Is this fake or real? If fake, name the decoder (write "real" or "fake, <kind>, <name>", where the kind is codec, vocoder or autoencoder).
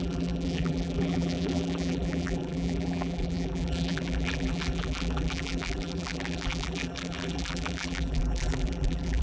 fake, vocoder, BigVGAN v2